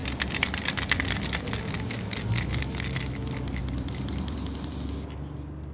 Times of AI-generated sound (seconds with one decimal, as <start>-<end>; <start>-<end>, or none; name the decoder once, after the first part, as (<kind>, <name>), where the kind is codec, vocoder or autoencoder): 3.6-4.7 (vocoder, BigVGAN v2)